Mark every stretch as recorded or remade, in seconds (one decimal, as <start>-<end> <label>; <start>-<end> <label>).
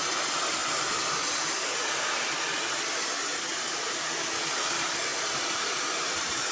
0.0-5.1 recorded; 5.1-5.8 remade; 5.8-6.5 recorded